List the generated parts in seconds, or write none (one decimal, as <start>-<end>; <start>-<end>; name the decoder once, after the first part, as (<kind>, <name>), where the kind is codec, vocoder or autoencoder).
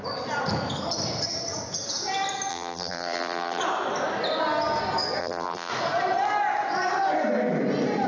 2.5-3.6 (vocoder, BigVGAN v2); 5.2-5.7